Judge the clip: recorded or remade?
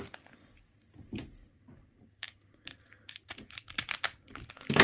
recorded